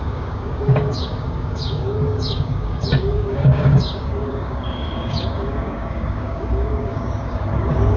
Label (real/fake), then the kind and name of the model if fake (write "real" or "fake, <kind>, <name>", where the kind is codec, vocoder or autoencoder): fake, codec, DAC